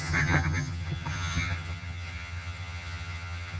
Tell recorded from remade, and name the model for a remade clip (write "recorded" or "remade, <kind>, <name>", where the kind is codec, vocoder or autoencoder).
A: remade, vocoder, HiFi-GAN